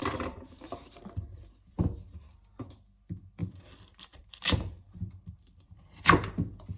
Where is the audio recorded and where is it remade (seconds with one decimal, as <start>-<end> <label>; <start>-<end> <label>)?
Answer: 0.0-1.0 remade; 1.0-3.4 recorded; 3.4-6.3 remade; 6.3-6.8 recorded

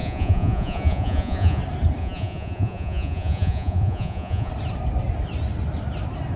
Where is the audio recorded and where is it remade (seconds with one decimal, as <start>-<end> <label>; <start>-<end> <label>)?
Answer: 0.0-1.6 remade; 1.6-2.0 recorded; 2.0-4.5 remade; 4.5-6.4 recorded

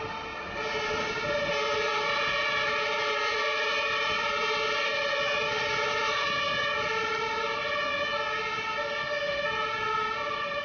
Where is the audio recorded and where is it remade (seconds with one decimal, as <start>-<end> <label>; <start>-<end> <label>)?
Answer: 0.0-10.6 recorded

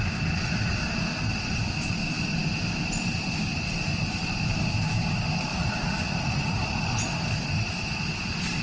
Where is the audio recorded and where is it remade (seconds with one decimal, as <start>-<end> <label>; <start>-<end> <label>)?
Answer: 0.0-5.5 recorded; 5.5-6.9 remade; 6.9-8.6 recorded

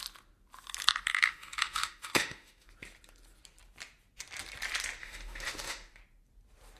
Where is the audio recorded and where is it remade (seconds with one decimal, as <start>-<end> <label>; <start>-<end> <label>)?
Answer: 0.0-1.1 recorded; 1.1-2.7 remade; 2.7-5.0 recorded; 5.0-6.0 remade; 6.0-6.8 recorded

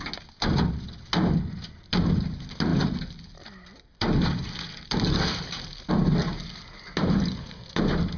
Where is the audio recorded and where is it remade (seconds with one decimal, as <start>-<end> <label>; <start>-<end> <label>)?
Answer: 0.0-8.2 recorded